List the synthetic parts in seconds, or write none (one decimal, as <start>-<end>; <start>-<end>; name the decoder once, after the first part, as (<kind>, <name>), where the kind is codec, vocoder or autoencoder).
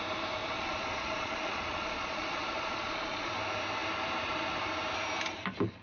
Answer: 0.4-3.3 (vocoder, Vocos)